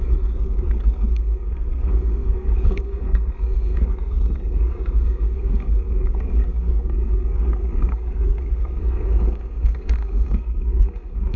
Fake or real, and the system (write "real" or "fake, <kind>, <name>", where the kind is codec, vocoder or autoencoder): fake, codec, SNAC